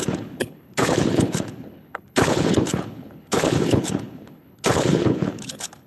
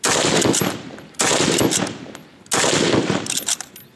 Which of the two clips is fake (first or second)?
first